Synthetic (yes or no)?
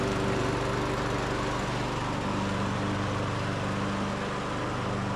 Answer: no